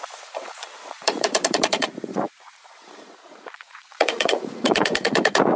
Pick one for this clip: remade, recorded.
remade